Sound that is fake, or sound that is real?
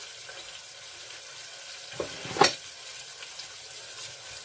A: real